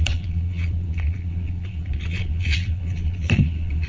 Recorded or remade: remade